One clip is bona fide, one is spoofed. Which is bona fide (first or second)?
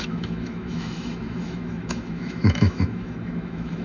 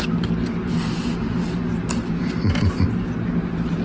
second